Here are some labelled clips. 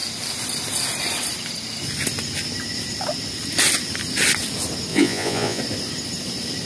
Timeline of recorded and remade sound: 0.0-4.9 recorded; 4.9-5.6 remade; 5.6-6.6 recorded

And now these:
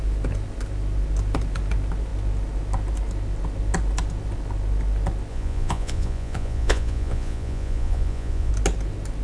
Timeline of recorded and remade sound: 0.0-5.3 recorded; 5.3-8.5 remade; 8.5-9.2 recorded

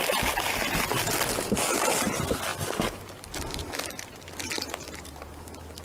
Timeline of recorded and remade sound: 0.0-5.8 recorded

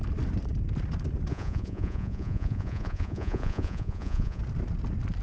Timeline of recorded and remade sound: 0.0-1.3 recorded; 1.3-4.4 remade; 4.4-5.2 recorded

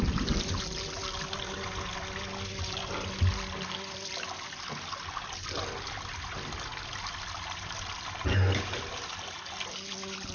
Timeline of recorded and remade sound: 0.0-10.3 recorded

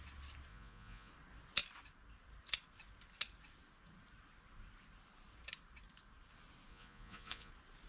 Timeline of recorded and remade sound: 0.0-0.5 recorded; 0.5-1.1 remade; 1.1-6.7 recorded; 6.7-7.5 remade; 7.5-7.9 recorded